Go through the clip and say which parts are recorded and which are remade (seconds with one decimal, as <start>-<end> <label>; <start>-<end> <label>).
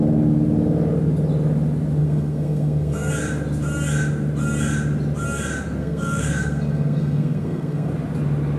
0.0-2.0 recorded; 2.0-3.1 remade; 3.1-5.8 recorded; 5.8-7.9 remade; 7.9-8.6 recorded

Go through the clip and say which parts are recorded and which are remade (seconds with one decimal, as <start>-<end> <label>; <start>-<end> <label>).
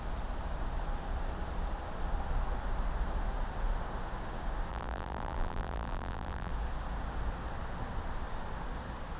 0.0-4.7 recorded; 4.7-6.5 remade; 6.5-9.2 recorded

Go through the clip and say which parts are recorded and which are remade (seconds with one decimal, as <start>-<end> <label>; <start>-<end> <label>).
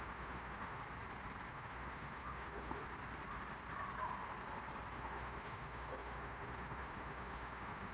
0.0-0.8 remade; 0.8-1.5 recorded; 1.5-2.8 remade; 2.8-4.9 recorded; 4.9-7.9 remade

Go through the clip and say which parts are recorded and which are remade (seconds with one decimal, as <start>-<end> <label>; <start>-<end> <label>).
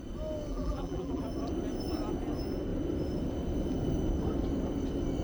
0.0-0.5 recorded; 0.5-1.2 remade; 1.2-5.2 recorded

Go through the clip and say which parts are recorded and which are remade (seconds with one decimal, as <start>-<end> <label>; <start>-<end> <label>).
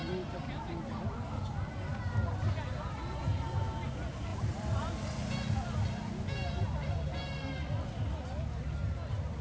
0.0-0.9 remade; 0.9-4.3 recorded; 4.3-4.9 remade; 4.9-9.4 recorded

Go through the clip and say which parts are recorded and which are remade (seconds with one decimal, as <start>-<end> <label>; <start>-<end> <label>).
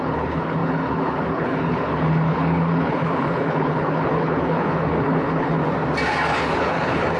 0.0-5.6 remade; 5.6-6.4 recorded; 6.4-7.2 remade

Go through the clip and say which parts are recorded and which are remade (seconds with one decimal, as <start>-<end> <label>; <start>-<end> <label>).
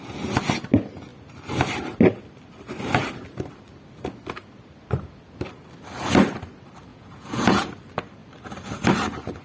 0.0-6.9 recorded; 6.9-7.7 remade; 7.7-9.4 recorded